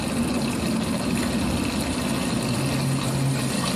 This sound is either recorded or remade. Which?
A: recorded